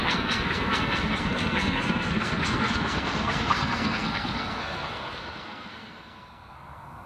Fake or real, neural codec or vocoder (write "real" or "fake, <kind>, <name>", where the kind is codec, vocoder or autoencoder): fake, codec, SNAC